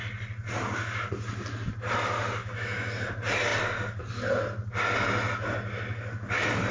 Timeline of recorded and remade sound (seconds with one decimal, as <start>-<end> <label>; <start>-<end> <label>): 0.0-2.4 recorded; 2.4-2.9 remade; 2.9-6.7 recorded